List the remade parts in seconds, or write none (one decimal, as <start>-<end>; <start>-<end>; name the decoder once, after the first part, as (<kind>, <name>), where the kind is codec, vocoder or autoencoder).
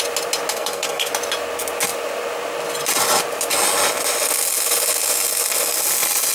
0.5-1.1 (codec, SNAC)